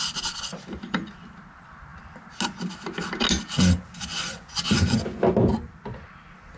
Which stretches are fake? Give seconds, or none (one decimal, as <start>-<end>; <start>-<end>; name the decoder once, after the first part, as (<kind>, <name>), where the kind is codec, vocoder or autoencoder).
4.1-5.2 (vocoder, Vocos)